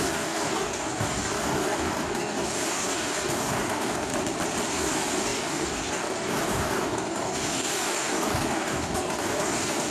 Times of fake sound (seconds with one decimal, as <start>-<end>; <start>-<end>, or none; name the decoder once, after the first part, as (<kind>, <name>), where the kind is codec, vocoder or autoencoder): 0.0-4.1 (codec, DAC); 4.7-9.9